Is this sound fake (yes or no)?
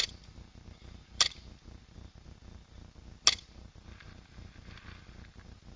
no